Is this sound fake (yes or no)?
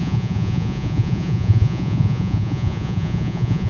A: yes